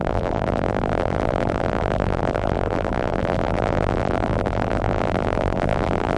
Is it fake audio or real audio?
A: fake